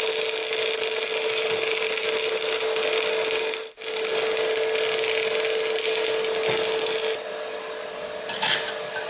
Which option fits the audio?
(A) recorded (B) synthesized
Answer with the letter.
A